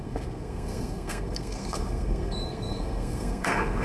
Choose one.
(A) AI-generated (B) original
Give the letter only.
A